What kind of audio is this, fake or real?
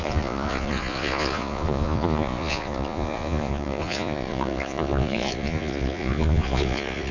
fake